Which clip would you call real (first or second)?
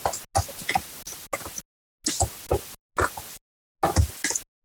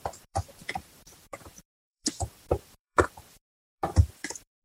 first